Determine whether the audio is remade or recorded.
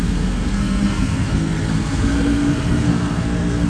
remade